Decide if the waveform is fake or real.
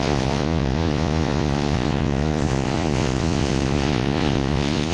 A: fake